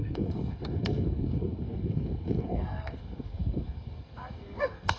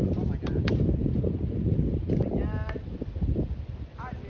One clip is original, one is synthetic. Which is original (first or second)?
second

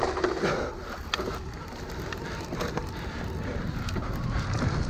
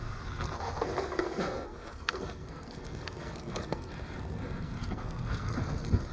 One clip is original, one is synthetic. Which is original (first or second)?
first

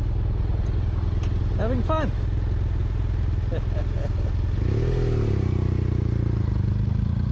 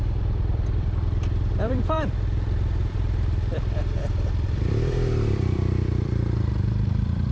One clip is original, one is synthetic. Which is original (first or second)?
first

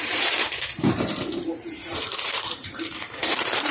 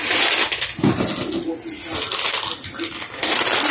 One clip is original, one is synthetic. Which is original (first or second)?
second